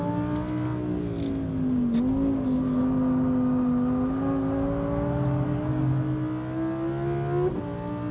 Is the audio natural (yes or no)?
yes